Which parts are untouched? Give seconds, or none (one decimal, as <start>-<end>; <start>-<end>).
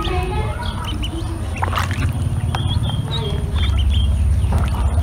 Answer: 0.0-5.0